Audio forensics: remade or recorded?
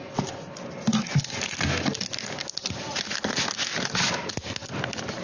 recorded